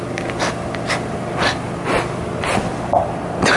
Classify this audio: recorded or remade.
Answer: recorded